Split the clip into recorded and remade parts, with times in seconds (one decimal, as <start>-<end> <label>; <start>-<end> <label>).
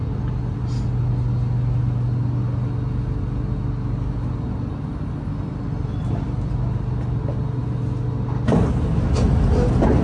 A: 0.0-10.0 recorded